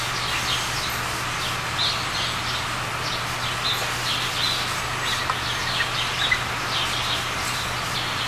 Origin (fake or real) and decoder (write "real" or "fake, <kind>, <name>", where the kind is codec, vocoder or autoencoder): real